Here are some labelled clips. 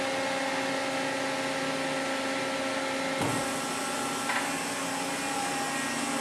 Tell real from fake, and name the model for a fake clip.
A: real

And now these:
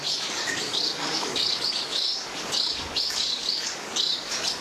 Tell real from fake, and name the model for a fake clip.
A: fake, codec, DAC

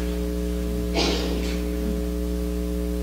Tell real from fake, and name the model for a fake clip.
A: real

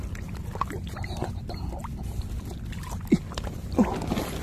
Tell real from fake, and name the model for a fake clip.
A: real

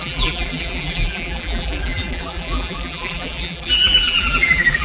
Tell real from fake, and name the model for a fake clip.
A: fake, vocoder, BigVGAN v2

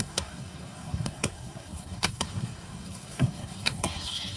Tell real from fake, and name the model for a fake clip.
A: fake, codec, SNAC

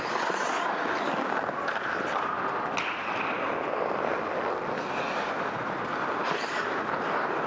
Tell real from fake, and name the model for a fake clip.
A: real